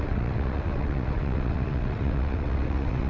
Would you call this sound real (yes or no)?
no